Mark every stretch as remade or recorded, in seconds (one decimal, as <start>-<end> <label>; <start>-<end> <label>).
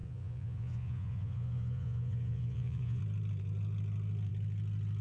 0.0-3.0 remade; 3.0-5.0 recorded